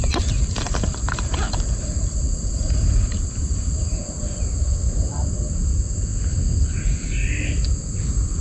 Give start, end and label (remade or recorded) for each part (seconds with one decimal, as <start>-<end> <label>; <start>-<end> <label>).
0.0-4.0 remade; 4.0-8.4 recorded